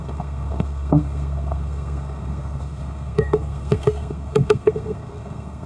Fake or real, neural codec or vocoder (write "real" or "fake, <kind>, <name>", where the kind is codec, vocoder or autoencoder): fake, codec, SNAC